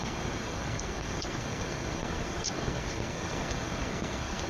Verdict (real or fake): fake